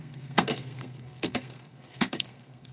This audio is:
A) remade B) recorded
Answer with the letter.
A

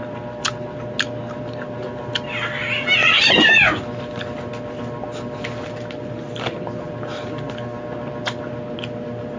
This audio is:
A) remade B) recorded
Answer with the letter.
B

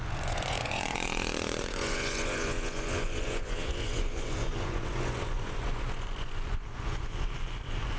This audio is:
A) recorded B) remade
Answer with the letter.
B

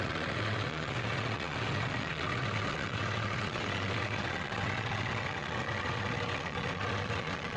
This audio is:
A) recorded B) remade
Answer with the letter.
B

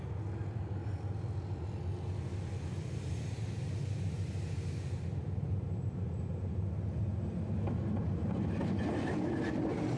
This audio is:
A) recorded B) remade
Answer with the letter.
A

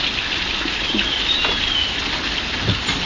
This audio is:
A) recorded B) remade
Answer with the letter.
A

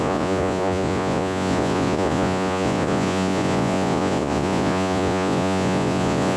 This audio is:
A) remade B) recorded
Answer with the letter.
A